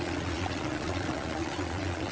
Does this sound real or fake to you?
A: fake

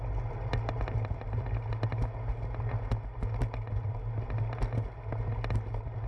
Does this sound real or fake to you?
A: real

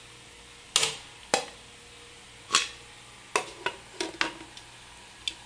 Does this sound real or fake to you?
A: real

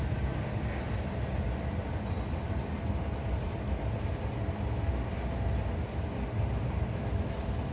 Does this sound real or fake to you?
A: real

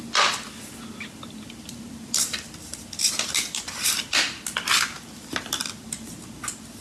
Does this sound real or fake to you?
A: real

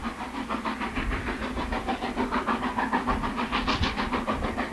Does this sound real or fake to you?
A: real